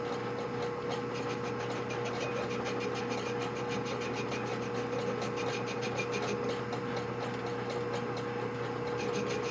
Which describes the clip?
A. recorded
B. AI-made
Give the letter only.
A